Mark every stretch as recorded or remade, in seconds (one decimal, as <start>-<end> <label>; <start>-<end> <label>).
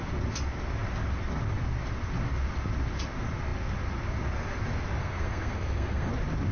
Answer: 0.0-5.0 recorded; 5.0-6.1 remade; 6.1-6.5 recorded